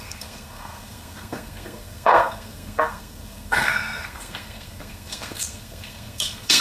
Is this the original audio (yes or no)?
no